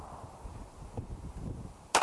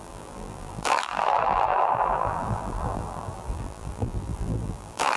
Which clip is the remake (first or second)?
second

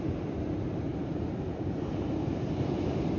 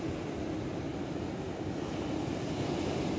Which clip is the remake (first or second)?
first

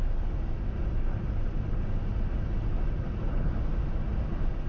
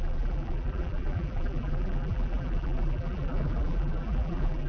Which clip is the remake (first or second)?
second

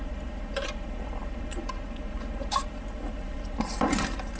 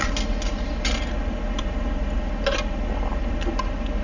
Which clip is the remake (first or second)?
first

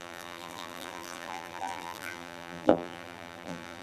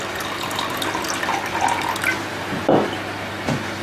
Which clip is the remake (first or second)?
first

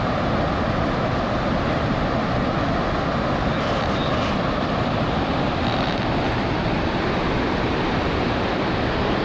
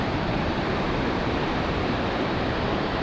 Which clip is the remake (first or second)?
second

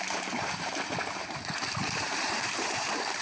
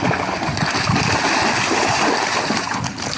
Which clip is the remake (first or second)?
first